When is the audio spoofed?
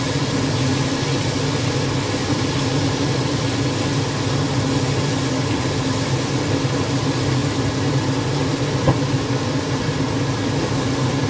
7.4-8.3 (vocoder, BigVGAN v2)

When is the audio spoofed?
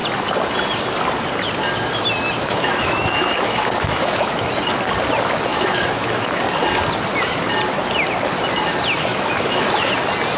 2.4-4.5 (autoencoder, DAC-VAE); 5.5-6.4; 9.1-9.9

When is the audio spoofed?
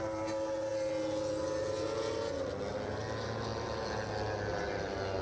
none